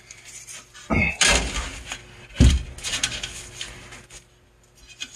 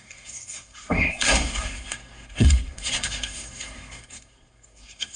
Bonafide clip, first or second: first